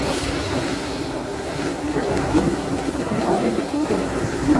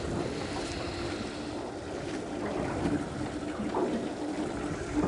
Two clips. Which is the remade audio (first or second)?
first